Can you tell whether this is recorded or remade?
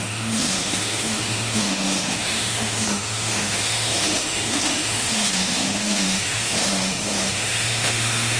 remade